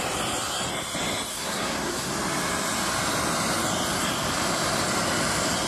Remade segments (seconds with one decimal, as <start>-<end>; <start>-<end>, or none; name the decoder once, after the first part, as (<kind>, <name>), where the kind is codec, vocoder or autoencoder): 1.3-2.1 (codec, SNAC)